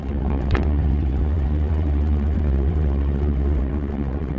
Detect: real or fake fake